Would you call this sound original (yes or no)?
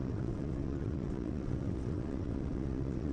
no